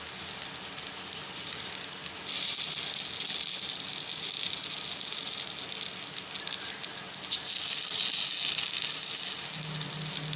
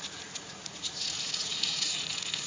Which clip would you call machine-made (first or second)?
second